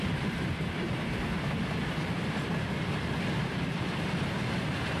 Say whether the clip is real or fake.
fake